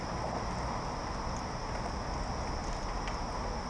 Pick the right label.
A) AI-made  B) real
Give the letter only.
B